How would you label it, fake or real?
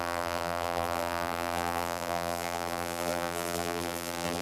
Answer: fake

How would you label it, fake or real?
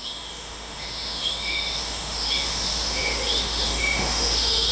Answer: fake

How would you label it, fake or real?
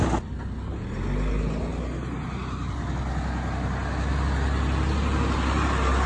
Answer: real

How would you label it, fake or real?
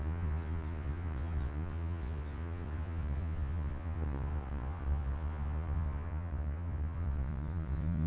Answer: fake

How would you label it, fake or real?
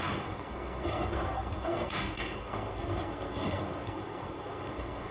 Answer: fake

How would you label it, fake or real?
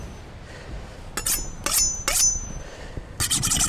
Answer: real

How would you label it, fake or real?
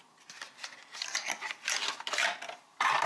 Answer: real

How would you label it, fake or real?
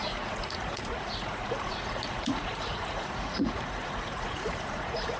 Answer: fake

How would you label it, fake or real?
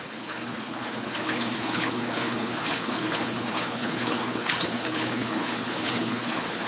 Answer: fake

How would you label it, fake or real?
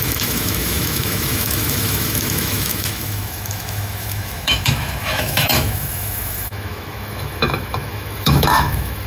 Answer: fake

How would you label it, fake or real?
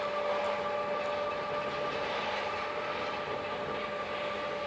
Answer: real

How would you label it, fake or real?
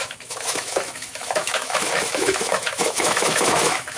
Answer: fake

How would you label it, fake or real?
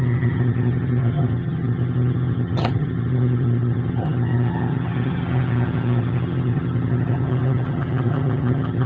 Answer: fake